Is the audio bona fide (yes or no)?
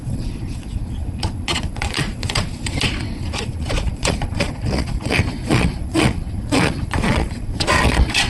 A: no